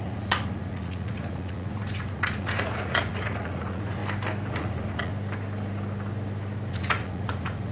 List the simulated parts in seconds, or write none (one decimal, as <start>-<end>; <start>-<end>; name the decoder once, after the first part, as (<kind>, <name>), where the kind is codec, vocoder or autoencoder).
0.0-4.0 (vocoder, Vocos); 4.5-5.1; 6.7-7.7

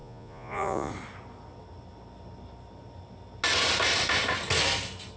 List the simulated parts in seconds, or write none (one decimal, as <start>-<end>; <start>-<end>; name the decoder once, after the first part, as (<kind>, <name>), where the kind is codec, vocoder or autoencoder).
0.0-0.9 (vocoder, Vocos)

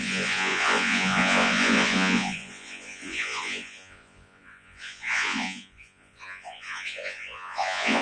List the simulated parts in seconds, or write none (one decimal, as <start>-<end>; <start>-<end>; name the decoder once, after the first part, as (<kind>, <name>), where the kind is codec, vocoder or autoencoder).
0.0-8.0 (vocoder, Vocos)

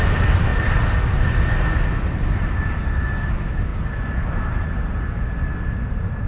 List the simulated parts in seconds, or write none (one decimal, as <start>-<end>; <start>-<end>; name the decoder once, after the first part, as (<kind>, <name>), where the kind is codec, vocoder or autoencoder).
none

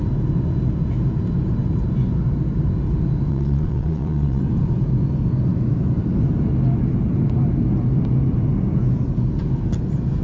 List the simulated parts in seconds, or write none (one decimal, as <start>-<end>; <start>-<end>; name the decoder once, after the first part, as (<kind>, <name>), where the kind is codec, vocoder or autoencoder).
3.3-4.4 (vocoder, Vocos)

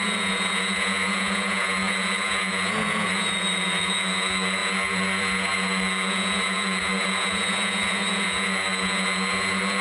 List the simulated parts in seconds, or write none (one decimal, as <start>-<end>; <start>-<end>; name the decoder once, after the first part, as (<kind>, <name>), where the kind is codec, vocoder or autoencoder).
0.0-9.8 (vocoder, Vocos)

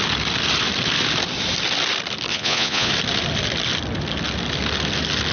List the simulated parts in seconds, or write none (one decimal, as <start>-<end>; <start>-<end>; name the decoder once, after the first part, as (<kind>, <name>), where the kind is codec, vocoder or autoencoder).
2.3-2.9 (vocoder, Vocos)